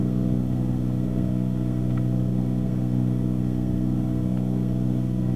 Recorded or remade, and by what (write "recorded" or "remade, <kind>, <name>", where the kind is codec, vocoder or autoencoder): remade, codec, SNAC